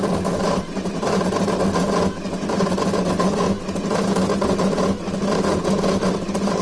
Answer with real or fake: real